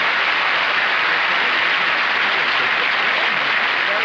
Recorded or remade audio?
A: recorded